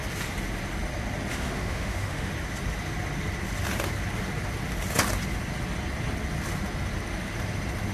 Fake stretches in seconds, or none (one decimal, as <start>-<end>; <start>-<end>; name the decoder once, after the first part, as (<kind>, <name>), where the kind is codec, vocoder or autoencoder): 1.3-2.3 (autoencoder, DAC-VAE)